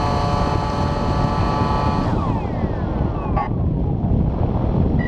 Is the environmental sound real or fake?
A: real